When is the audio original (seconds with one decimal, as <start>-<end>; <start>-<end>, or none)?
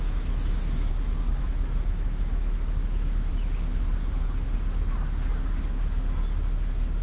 0.9-1.4; 3.3-7.0